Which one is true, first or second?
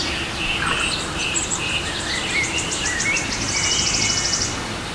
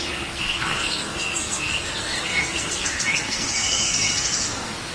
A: first